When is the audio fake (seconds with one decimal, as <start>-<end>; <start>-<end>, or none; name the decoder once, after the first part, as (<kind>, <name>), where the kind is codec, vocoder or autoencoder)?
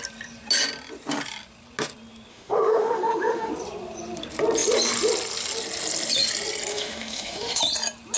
2.3-3.5 (autoencoder, DAC-VAE); 6.7-7.6